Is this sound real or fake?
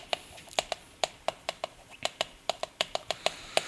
fake